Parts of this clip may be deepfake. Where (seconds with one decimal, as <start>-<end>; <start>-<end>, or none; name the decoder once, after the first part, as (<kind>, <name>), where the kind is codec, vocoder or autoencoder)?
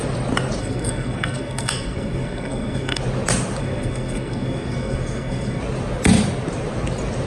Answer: 0.6-3.0 (codec, SNAC); 3.6-5.6